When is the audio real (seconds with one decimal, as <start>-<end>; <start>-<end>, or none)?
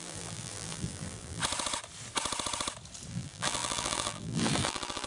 1.4-3.1